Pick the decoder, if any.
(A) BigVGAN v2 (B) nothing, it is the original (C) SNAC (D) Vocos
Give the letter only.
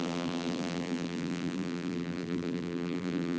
A